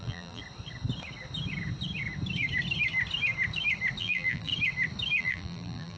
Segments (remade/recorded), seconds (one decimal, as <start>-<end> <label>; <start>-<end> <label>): 0.0-0.4 remade; 0.4-4.0 recorded; 4.0-4.5 remade; 4.5-5.2 recorded; 5.2-6.0 remade